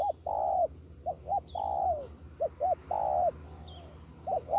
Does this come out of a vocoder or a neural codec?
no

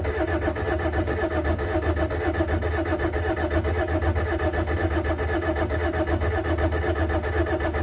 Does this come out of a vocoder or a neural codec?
no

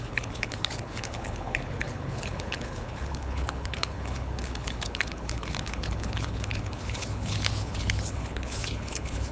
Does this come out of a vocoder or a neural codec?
yes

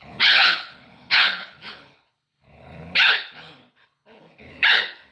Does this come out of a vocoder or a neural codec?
yes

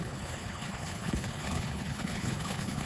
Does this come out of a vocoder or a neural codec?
yes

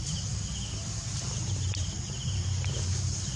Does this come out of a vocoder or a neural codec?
no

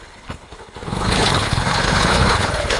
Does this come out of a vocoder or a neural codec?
yes